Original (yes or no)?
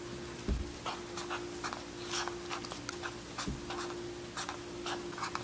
yes